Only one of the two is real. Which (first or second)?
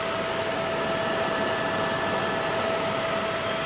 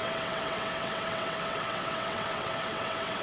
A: first